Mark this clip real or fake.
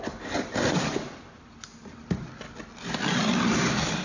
real